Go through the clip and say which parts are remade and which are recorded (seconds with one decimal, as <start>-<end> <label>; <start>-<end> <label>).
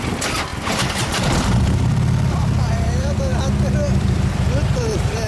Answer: 0.0-0.5 remade; 0.5-1.0 recorded; 1.0-3.3 remade; 3.3-4.0 recorded; 4.0-5.3 remade